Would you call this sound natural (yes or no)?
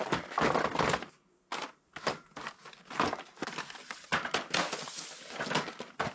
yes